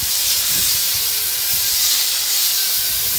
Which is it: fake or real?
fake